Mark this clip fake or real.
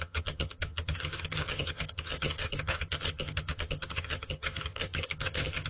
fake